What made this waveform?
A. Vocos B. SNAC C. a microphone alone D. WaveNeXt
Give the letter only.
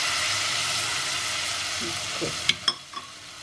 C